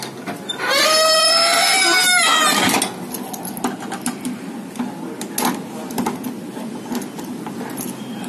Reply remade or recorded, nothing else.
recorded